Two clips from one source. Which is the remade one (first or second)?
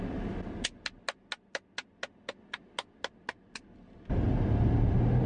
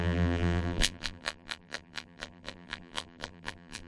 second